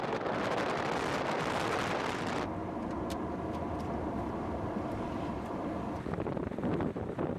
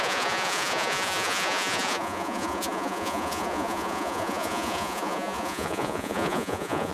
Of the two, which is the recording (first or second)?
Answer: first